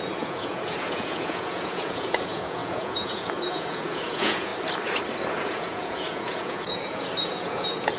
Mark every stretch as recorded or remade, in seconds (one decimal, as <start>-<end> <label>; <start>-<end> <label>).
0.0-4.5 remade; 4.5-5.3 recorded; 5.3-8.0 remade